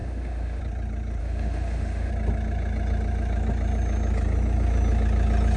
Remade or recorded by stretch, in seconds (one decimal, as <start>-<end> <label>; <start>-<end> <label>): 0.0-0.6 remade; 0.6-1.2 recorded; 1.2-2.1 remade; 2.1-5.6 recorded